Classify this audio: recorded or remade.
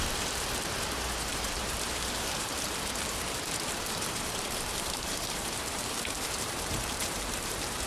remade